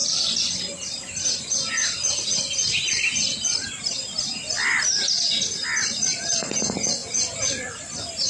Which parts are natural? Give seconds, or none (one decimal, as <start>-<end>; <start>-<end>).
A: 0.6-8.3